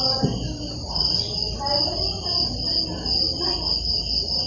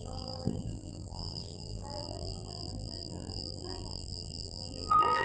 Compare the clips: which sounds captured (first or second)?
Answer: first